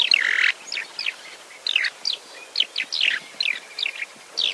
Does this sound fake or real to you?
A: real